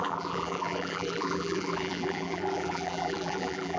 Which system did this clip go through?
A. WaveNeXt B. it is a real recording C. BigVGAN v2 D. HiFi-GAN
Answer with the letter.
C